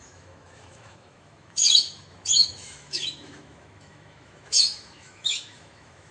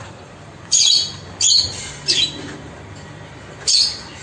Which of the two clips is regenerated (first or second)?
first